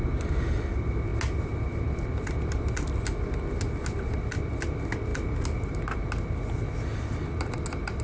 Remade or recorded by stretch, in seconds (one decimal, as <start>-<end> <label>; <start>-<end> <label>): 0.0-8.0 recorded